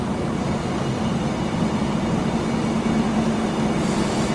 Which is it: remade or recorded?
recorded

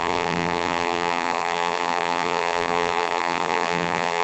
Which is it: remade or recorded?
remade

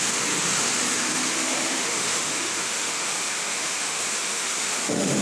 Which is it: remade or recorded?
remade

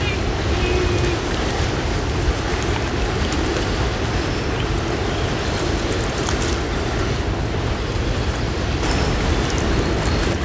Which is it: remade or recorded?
recorded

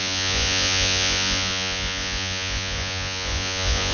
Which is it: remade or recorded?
remade